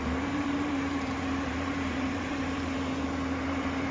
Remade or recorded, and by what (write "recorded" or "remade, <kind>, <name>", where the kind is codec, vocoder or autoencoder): remade, vocoder, BigVGAN v2